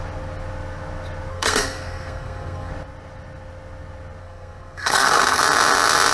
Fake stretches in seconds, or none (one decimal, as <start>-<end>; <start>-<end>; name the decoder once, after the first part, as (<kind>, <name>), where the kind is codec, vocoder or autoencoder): 1.3-2.7 (codec, SNAC); 4.2-5.4